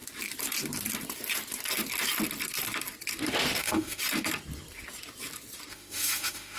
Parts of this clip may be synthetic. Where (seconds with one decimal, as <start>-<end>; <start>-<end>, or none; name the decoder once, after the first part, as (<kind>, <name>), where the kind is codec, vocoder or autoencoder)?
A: 3.6-4.0 (autoencoder, DAC-VAE); 5.7-6.6